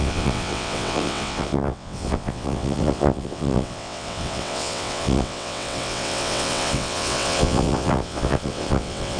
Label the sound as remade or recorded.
remade